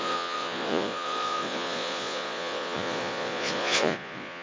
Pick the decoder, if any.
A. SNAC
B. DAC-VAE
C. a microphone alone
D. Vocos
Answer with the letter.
D